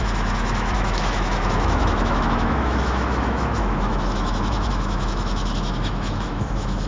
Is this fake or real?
fake